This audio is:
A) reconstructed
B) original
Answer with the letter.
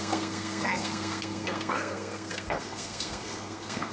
A